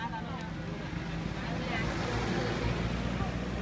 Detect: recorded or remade recorded